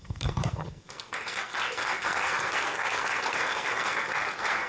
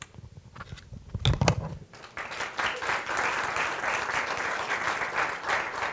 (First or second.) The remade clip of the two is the first